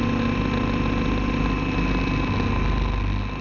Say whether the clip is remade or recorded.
recorded